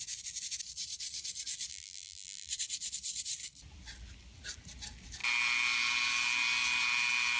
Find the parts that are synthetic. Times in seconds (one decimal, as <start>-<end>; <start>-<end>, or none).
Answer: 1.7-2.5